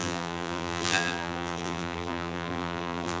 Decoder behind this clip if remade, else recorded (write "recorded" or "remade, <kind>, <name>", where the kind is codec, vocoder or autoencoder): remade, vocoder, BigVGAN v2